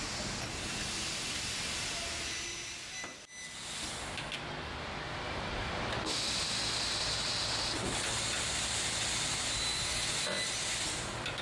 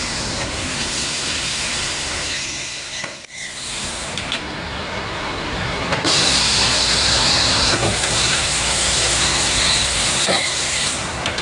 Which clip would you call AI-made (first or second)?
second